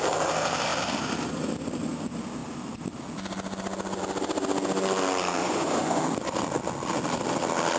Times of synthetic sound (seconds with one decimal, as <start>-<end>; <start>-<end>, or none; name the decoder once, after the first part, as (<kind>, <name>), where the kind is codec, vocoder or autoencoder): 5.4-6.0 (vocoder, Vocos)